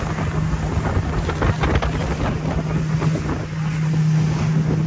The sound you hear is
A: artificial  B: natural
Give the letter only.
B